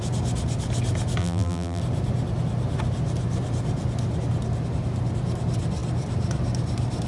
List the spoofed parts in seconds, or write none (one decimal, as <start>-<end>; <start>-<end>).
1.2-1.8

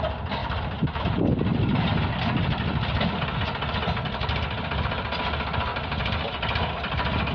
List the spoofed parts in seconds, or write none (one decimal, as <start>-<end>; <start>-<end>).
0.4-1.0; 5.7-6.3